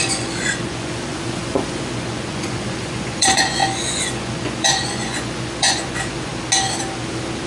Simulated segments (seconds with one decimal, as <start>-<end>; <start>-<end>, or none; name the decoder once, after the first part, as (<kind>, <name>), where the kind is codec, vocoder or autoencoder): 0.0-6.3 (vocoder, Vocos)